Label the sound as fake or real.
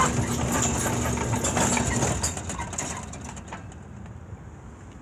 real